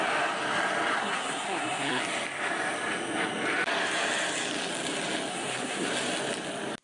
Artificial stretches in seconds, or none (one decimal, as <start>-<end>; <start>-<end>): 1.0-2.0; 5.3-5.9

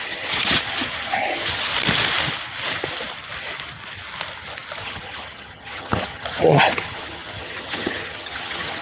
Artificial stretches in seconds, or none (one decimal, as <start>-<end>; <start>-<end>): 0.0-1.7; 4.8-8.8

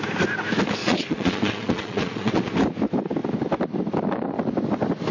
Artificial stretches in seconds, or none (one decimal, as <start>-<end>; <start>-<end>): 0.8-2.5

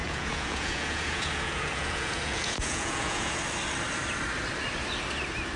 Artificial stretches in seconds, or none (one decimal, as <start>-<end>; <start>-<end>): 0.0-3.4